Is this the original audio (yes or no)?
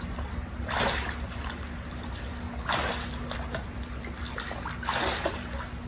yes